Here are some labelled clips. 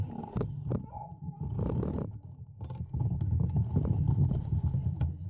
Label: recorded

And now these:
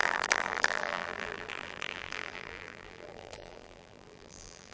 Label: remade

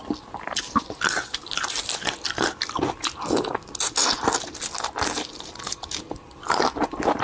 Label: recorded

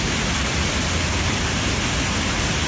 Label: recorded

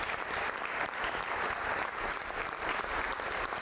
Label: remade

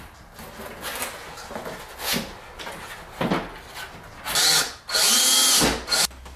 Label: recorded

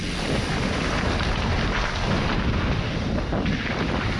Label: recorded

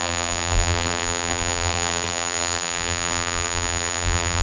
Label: remade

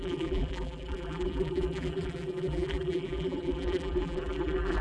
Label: remade